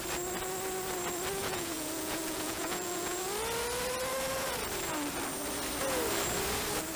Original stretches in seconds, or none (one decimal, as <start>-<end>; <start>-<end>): 0.0-1.4; 3.2-7.0